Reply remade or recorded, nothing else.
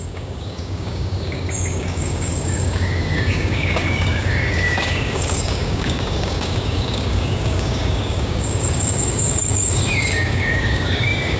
remade